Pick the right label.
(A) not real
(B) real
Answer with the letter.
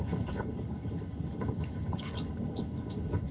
A